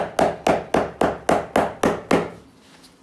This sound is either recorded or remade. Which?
recorded